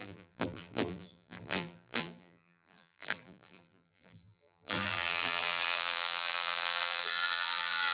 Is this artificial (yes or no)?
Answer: yes